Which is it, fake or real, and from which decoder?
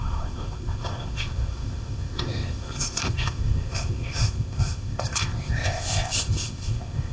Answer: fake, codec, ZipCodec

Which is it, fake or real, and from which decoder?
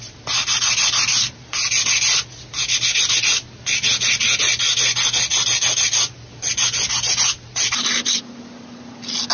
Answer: real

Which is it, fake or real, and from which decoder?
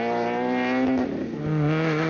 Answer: real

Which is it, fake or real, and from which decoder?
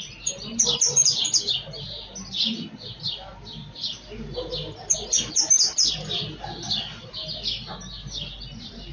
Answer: real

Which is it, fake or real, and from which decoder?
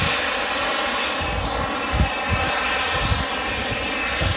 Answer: real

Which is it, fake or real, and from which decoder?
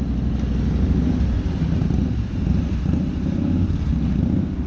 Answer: real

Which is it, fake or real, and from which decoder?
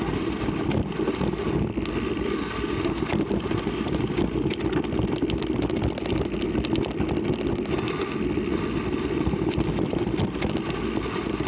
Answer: real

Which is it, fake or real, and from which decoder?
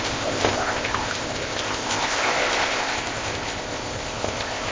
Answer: fake, codec, ZipCodec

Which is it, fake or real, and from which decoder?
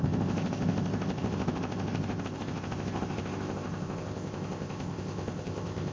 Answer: fake, codec, ZipCodec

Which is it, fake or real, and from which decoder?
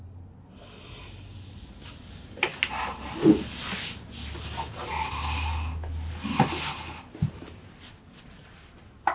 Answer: real